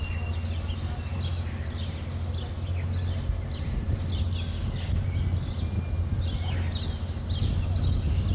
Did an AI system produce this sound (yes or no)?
no